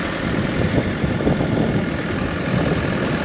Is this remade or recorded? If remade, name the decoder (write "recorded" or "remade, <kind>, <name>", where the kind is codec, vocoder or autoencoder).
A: remade, vocoder, BigVGAN v2